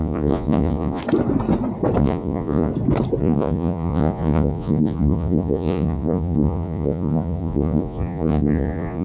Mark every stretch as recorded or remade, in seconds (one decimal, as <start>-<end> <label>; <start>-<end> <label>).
0.0-1.0 remade; 1.0-2.0 recorded; 2.0-2.7 remade; 2.7-3.2 recorded; 3.2-9.0 remade